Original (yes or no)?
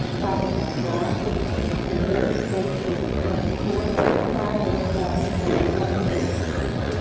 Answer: no